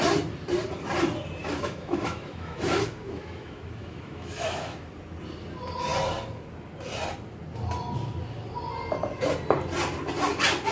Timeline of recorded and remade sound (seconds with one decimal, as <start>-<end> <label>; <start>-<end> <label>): 0.0-1.4 recorded; 1.4-4.9 remade; 4.9-10.7 recorded